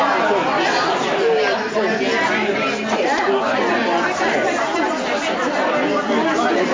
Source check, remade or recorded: recorded